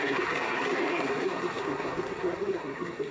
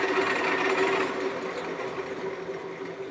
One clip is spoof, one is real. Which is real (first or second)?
second